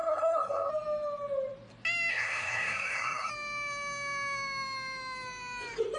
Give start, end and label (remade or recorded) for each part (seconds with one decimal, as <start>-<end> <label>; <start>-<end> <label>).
0.0-0.7 remade; 0.7-2.1 recorded; 2.1-3.3 remade; 3.3-6.0 recorded